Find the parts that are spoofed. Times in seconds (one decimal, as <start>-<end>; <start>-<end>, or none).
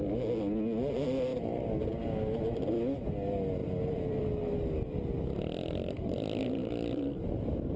3.6-4.2